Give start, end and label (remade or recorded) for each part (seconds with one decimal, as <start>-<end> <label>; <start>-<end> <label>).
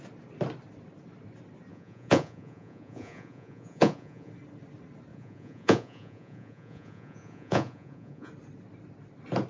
0.0-1.7 recorded; 1.7-4.3 remade; 4.3-5.1 recorded; 5.1-8.3 remade; 8.3-9.5 recorded